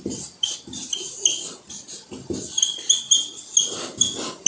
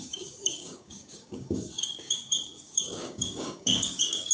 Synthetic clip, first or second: second